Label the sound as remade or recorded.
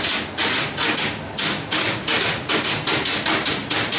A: recorded